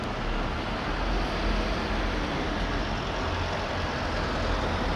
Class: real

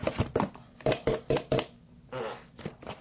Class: fake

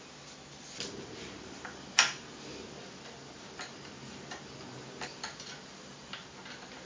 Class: real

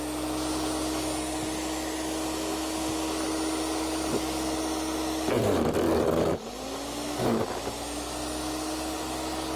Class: real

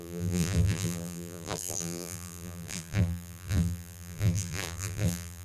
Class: fake